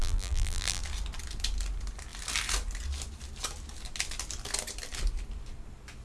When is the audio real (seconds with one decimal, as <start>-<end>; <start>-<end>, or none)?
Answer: 0.8-6.0